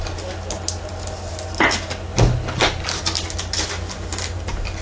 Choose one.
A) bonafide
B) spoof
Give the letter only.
A